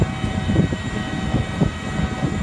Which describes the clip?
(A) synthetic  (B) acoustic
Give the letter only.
A